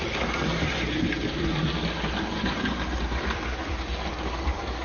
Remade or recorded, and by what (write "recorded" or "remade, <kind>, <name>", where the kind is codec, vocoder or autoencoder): remade, vocoder, BigVGAN v2